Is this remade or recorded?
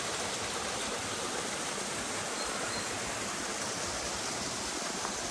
recorded